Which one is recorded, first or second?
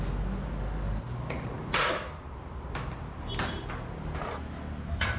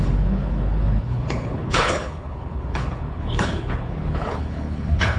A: first